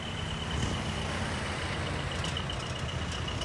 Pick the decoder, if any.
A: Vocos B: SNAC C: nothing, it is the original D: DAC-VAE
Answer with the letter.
C